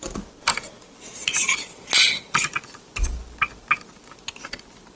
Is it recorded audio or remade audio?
recorded